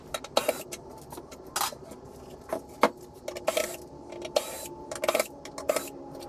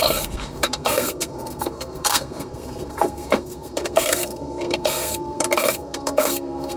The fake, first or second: second